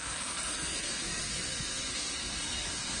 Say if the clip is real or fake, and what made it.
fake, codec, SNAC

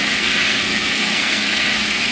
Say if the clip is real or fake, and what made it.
fake, codec, SNAC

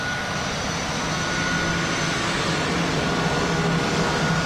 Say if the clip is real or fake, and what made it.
real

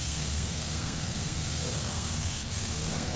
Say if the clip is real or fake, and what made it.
fake, codec, SNAC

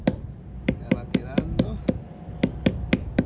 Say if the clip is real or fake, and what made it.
real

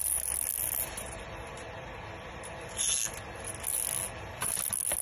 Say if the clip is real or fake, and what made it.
real